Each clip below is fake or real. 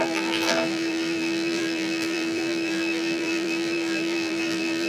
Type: fake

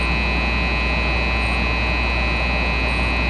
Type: real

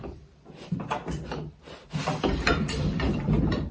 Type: fake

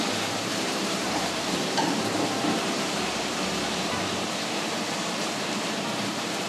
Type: fake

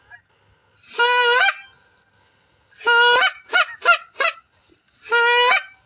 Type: real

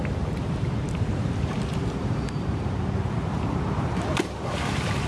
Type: fake